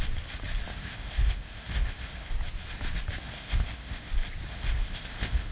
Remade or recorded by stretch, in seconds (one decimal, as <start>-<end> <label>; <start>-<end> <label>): 0.0-0.7 recorded; 0.7-2.3 remade; 2.3-3.2 recorded; 3.2-4.1 remade; 4.1-4.5 recorded; 4.5-5.5 remade